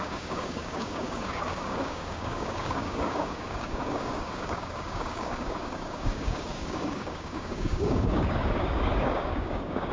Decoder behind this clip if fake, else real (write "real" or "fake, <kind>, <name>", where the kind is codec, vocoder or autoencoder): fake, codec, DAC